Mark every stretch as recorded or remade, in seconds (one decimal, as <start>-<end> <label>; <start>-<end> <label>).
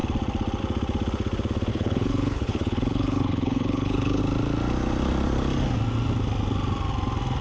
0.0-1.7 recorded; 1.7-4.2 remade; 4.2-7.4 recorded